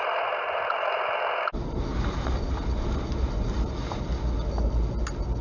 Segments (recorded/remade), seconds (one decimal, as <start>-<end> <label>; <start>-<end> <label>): 0.0-1.9 recorded; 1.9-3.7 remade; 3.7-5.4 recorded